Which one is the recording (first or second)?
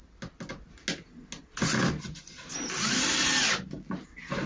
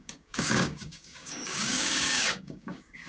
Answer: first